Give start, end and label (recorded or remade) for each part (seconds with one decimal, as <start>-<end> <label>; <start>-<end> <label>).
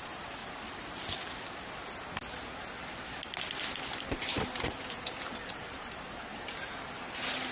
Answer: 0.0-0.4 remade; 0.4-4.7 recorded; 4.7-7.5 remade